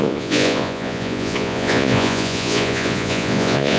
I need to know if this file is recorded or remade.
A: remade